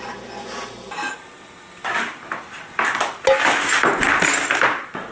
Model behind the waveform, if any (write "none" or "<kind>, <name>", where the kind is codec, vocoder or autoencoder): none